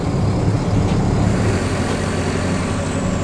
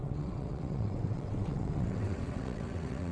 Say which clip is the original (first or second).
first